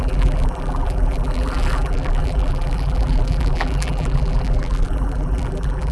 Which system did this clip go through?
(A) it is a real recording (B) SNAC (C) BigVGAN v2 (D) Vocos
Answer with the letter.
C